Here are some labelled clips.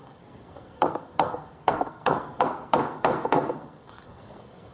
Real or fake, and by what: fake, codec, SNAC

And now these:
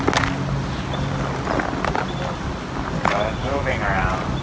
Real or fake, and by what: real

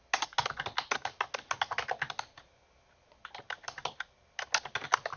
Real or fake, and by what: real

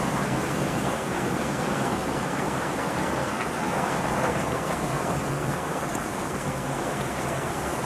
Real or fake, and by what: fake, codec, SNAC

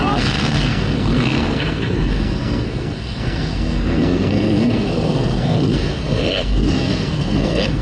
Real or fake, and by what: fake, codec, SNAC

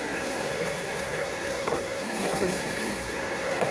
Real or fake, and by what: fake, codec, SNAC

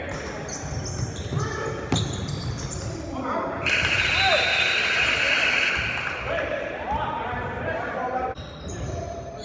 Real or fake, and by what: real